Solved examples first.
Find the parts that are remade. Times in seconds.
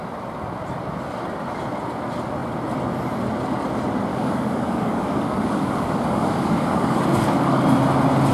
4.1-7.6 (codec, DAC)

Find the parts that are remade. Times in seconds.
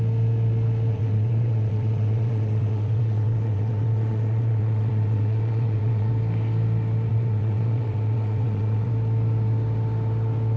0.9-6.1 (vocoder, WaveNeXt); 7.1-8.9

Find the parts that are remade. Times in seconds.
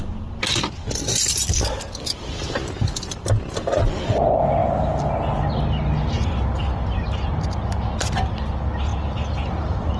none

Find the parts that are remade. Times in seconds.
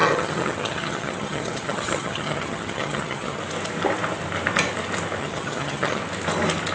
0.0-3.4 (vocoder, HiFi-GAN); 5.2-6.0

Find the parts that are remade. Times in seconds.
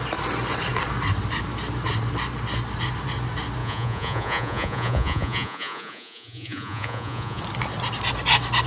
3.6-7.4 (vocoder, Vocos)